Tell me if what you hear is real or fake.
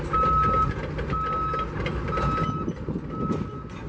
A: real